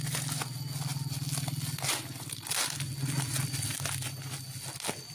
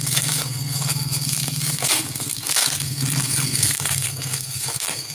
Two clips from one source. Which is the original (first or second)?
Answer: first